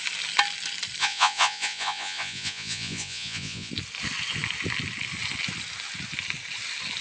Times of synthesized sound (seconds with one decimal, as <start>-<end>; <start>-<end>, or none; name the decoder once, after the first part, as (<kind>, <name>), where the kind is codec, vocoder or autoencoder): 1.0-3.7 (vocoder, Vocos)